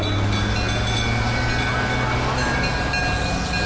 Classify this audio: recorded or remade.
recorded